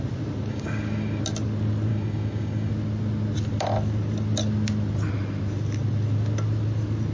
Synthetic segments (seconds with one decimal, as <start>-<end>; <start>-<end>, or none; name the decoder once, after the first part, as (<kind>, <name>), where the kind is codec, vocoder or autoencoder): 0.5-1.2 (codec, DAC); 1.9-2.7